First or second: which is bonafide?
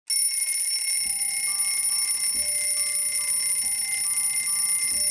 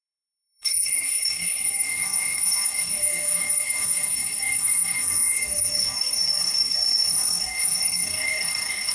first